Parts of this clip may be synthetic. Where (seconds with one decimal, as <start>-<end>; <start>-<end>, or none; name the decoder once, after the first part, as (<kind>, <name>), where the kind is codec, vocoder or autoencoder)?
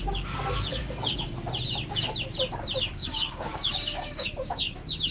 0.0-0.8 (codec, DAC); 3.0-5.1